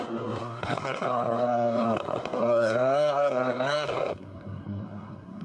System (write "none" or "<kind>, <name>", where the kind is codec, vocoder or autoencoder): codec, SNAC